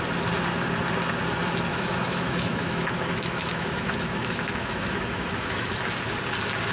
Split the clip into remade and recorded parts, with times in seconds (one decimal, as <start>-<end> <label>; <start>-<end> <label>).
0.0-1.7 recorded; 1.7-5.7 remade; 5.7-6.7 recorded